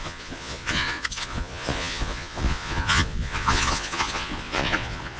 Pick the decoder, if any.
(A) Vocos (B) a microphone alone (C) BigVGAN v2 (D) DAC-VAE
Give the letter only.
A